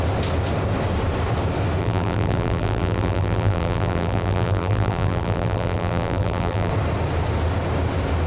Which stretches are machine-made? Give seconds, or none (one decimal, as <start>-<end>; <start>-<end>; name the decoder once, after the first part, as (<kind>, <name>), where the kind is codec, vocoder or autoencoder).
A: 1.8-6.7 (vocoder, BigVGAN v2)